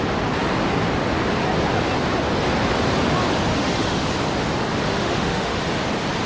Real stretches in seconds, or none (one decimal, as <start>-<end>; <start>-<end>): 0.0-3.5; 4.1-4.9; 5.6-6.3